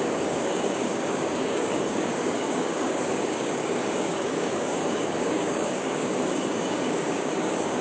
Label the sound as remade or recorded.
remade